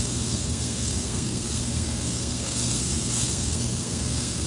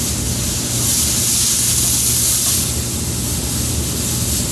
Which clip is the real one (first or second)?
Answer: second